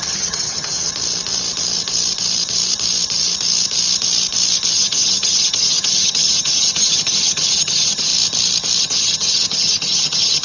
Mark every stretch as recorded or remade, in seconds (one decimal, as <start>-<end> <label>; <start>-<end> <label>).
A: 0.0-0.9 remade; 0.9-4.7 recorded; 4.7-8.1 remade; 8.1-8.8 recorded; 8.8-10.4 remade